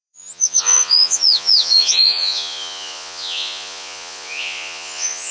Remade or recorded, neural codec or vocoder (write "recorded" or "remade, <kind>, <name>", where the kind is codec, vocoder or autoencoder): remade, vocoder, Vocos